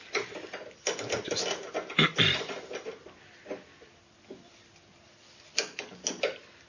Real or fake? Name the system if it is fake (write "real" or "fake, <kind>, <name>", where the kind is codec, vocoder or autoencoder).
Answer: real